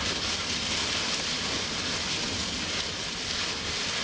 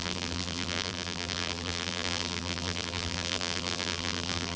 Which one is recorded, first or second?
first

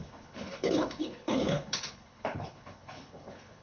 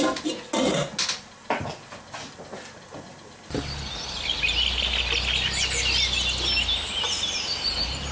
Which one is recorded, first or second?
second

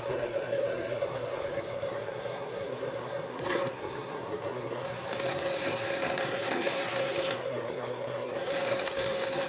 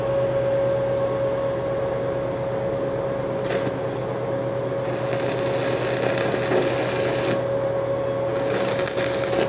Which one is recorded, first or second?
second